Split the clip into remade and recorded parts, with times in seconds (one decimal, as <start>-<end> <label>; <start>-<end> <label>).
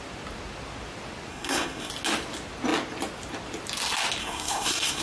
0.0-1.3 recorded; 1.3-1.9 remade; 1.9-4.2 recorded; 4.2-5.0 remade